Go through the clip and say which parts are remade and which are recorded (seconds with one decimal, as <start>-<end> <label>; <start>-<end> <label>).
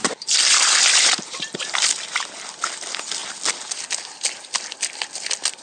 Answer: 0.0-5.6 recorded